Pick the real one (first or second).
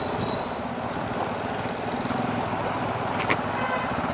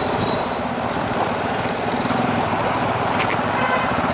first